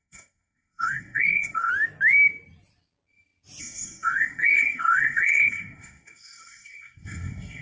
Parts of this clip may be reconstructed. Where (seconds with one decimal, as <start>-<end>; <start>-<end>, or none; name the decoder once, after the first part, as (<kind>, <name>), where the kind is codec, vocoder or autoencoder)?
0.0-1.7 (codec, SNAC); 3.6-7.6